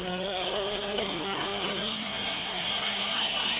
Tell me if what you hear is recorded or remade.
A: remade